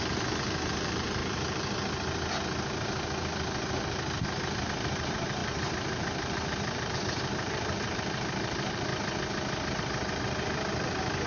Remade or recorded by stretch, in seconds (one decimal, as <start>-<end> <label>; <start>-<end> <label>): 0.0-1.2 remade; 1.2-4.6 recorded; 4.6-8.9 remade; 8.9-9.7 recorded; 9.7-11.3 remade